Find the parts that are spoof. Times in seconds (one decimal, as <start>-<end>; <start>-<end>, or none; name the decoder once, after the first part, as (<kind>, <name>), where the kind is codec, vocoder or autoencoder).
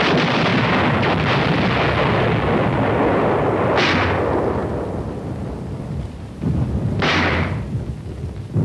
0.0-0.5 (vocoder, BigVGAN v2); 4.0-4.6; 5.6-8.6